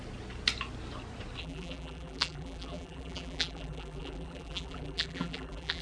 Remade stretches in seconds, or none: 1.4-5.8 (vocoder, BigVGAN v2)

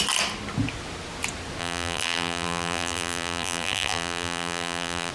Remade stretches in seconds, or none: 1.6-5.1 (vocoder, BigVGAN v2)

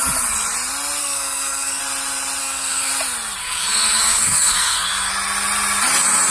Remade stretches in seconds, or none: 1.0-1.8 (codec, SNAC); 2.4-2.9; 3.4-5.1

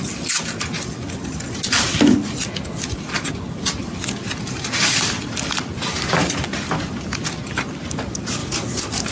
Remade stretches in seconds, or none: 8.4-9.1 (vocoder, BigVGAN v2)

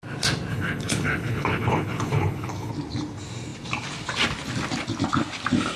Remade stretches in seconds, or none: 0.5-2.7 (codec, HILCodec)

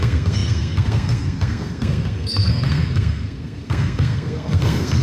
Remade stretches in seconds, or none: 0.0-5.0 (codec, SNAC)

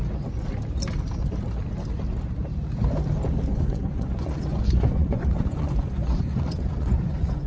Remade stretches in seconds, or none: 3.5-7.5 (vocoder, Vocos)